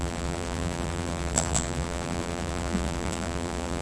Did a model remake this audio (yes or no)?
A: yes